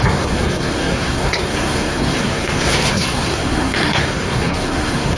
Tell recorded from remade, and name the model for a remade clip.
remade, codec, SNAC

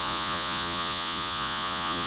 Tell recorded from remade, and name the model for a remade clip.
remade, vocoder, Vocos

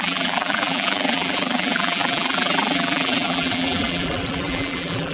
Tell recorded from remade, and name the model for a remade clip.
remade, vocoder, BigVGAN v2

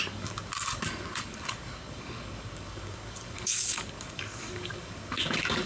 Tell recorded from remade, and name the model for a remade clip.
remade, codec, DAC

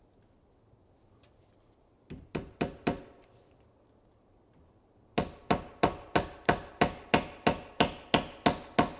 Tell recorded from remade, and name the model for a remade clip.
recorded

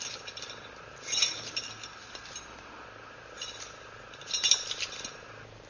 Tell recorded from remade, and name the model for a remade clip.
recorded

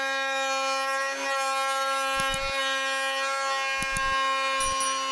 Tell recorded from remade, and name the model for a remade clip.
recorded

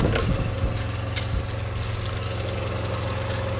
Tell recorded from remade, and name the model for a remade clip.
recorded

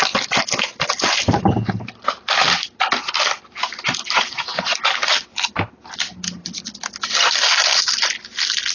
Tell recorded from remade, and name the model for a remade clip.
recorded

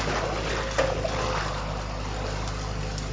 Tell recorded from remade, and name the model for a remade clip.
recorded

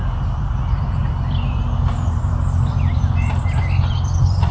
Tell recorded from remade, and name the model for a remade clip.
remade, vocoder, BigVGAN v2